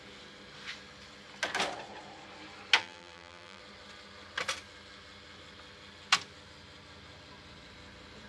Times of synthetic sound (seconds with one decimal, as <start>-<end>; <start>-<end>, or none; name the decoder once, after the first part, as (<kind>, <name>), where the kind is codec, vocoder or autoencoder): 2.8-3.6 (vocoder, BigVGAN v2)